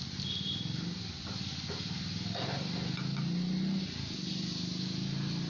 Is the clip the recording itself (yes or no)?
yes